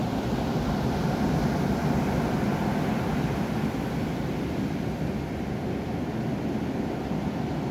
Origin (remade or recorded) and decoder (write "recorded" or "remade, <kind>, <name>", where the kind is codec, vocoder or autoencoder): recorded